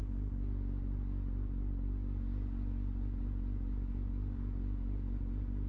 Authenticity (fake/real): real